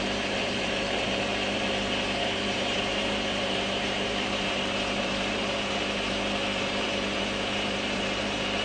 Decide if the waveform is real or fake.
fake